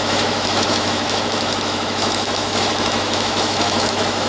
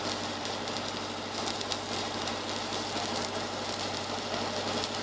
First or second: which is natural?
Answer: second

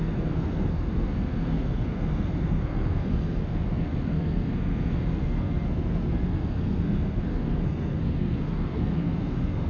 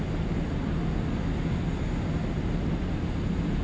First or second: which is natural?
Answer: second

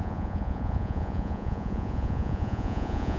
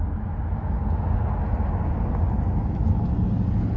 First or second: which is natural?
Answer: second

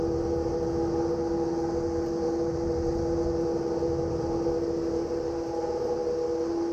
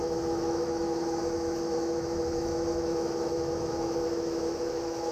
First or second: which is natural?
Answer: first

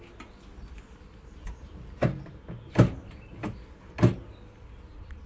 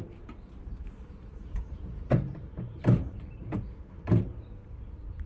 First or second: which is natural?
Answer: first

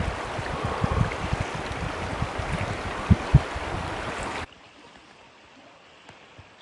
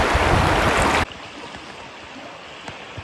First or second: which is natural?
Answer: second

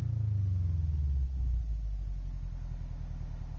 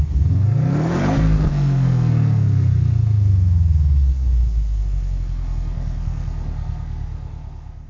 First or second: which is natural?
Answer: first